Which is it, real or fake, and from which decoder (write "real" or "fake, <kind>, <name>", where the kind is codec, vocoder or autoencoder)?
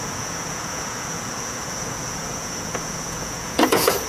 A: fake, vocoder, Vocos